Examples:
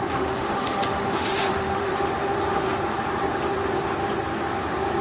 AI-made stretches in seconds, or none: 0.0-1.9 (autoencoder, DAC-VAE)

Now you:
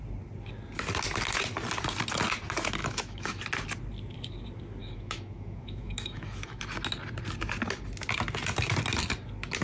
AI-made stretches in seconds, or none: 2.8-3.4 (autoencoder, DAC-VAE); 4.8-6.6

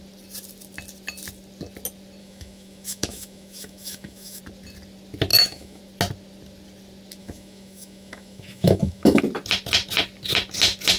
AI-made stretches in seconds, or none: 2.2-4.4 (autoencoder, DAC-VAE); 5.3-5.8; 7.2-9.2

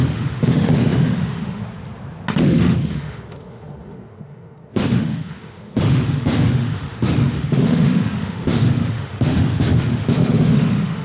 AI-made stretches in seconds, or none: 0.0-1.6 (autoencoder, DAC-VAE); 2.4-11.0

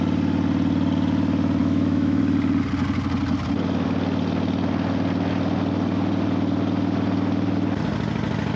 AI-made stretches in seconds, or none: 1.6-2.2 (autoencoder, DAC-VAE)

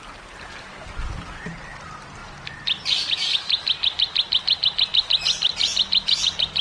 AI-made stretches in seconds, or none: none